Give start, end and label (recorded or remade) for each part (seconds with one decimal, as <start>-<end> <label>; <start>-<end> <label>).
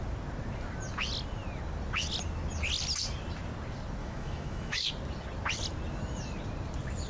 0.0-4.0 recorded; 4.0-4.9 remade; 4.9-7.1 recorded